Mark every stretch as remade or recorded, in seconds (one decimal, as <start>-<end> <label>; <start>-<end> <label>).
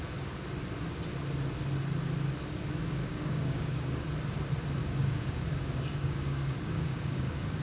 0.0-3.0 recorded; 3.0-4.0 remade; 4.0-4.8 recorded; 4.8-7.6 remade